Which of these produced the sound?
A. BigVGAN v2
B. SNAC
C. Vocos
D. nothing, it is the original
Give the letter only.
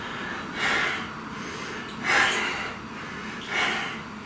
D